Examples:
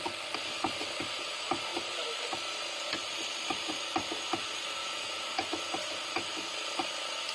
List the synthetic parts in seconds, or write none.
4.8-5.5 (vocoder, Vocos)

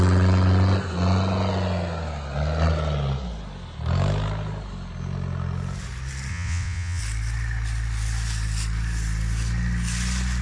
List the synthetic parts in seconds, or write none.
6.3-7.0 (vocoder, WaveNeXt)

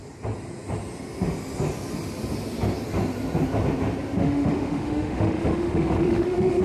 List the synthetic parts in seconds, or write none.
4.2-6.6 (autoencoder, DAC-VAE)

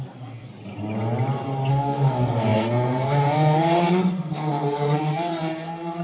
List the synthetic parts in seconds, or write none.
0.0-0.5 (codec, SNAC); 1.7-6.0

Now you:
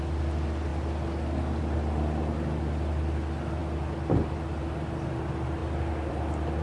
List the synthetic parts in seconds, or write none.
none